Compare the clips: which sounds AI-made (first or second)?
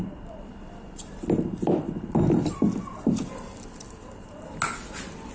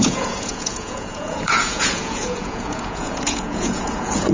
second